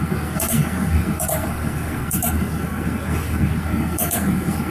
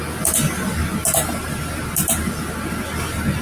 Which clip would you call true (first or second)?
second